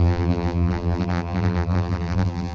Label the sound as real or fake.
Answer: fake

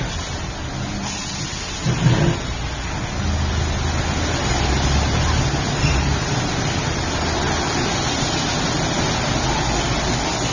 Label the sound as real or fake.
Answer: real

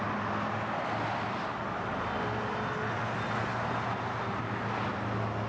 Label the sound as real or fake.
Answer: real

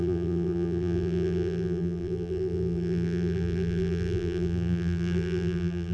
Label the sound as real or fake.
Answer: fake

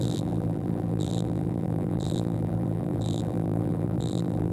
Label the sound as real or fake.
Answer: fake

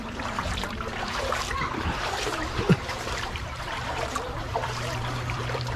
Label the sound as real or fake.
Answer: fake